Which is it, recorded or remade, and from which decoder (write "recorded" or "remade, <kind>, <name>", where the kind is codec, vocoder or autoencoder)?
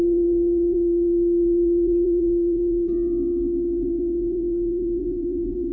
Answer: remade, vocoder, BigVGAN v2